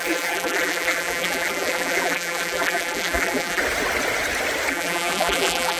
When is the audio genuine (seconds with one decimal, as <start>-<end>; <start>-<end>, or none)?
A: 3.6-4.7

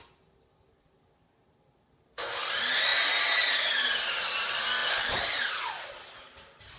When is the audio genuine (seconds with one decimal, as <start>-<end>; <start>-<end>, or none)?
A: 0.0-4.8; 5.7-6.8

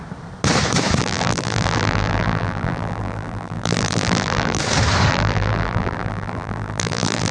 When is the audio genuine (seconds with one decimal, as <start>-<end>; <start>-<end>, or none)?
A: 0.0-1.0; 4.6-5.1

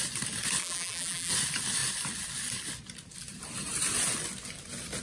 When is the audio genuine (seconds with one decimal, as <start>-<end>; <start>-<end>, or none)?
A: 0.0-0.6; 1.3-5.0

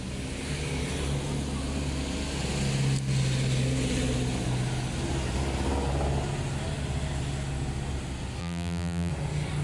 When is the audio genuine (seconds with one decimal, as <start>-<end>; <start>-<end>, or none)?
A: 0.0-8.4; 9.1-9.6

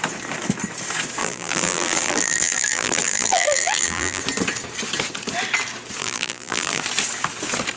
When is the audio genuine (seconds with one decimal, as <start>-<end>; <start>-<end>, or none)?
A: 0.0-1.2; 4.2-6.0; 6.8-7.8